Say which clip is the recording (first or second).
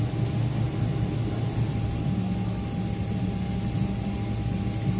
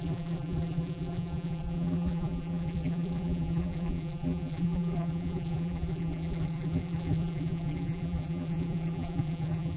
first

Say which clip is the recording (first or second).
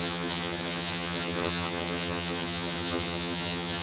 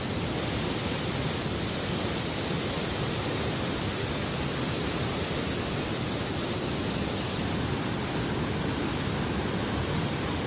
second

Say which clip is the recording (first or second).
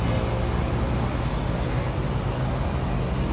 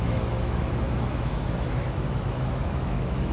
first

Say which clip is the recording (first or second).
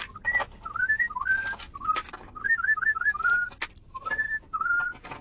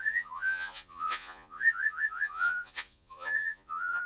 first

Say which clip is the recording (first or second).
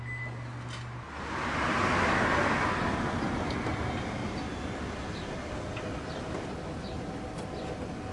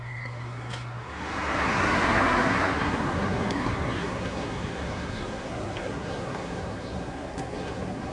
first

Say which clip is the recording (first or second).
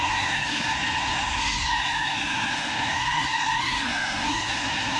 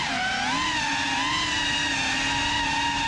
second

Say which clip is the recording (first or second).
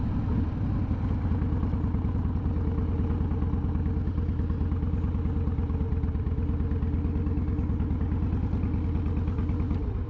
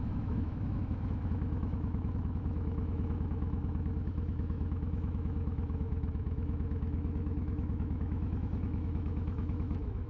first